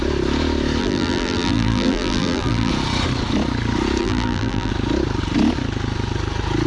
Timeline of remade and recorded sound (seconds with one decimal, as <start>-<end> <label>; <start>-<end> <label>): 0.0-0.8 recorded; 0.8-2.7 remade; 2.7-4.0 recorded; 4.0-4.7 remade; 4.7-6.7 recorded